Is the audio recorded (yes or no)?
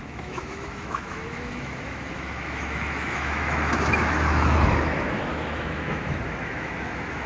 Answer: no